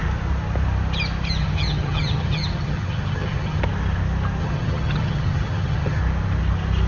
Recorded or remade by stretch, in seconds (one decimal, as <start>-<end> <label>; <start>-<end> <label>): 0.0-1.4 recorded; 1.4-3.6 remade; 3.6-4.4 recorded; 4.4-6.0 remade; 6.0-6.9 recorded